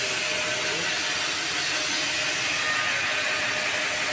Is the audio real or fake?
real